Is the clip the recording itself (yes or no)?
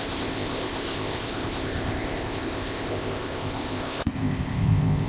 no